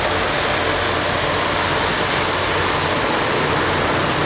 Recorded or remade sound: recorded